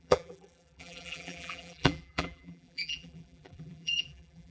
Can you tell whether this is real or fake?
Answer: fake